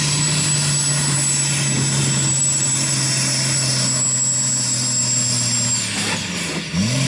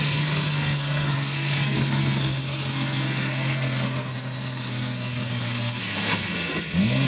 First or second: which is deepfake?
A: second